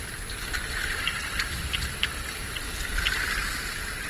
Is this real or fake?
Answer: real